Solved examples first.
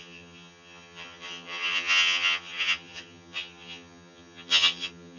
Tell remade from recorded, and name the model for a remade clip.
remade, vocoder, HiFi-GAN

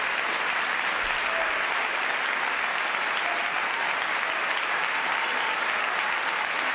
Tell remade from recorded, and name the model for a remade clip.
recorded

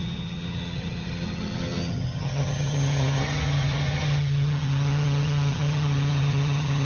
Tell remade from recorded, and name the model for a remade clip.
remade, vocoder, HiFi-GAN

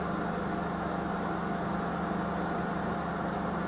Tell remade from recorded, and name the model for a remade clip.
recorded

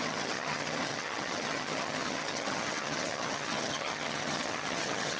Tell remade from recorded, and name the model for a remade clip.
remade, vocoder, HiFi-GAN